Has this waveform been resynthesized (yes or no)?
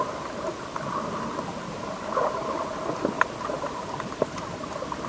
no